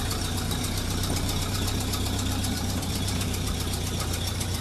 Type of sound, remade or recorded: remade